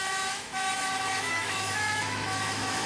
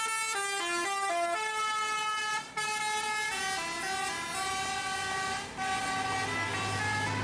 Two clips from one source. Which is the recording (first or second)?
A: second